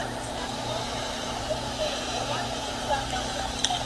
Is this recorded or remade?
remade